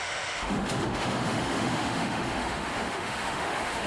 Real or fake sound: fake